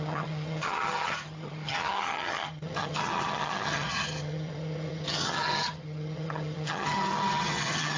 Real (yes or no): no